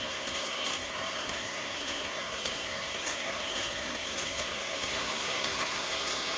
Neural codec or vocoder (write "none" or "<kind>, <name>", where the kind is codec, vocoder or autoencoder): codec, SNAC